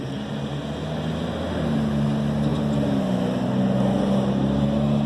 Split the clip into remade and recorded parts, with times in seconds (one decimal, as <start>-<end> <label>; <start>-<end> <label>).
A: 0.0-5.1 recorded